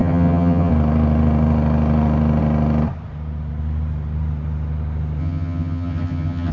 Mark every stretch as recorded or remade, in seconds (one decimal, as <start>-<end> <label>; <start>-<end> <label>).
0.0-0.7 remade; 0.7-5.2 recorded; 5.2-6.5 remade